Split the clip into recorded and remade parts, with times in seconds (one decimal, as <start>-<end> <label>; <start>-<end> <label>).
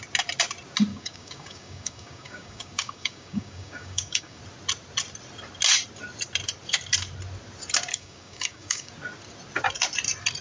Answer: 0.0-0.9 recorded; 0.9-4.4 remade; 4.4-7.9 recorded; 7.9-8.9 remade; 8.9-10.4 recorded